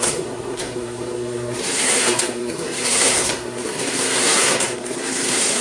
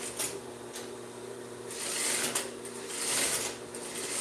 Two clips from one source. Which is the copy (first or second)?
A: first